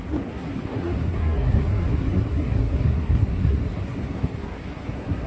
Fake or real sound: fake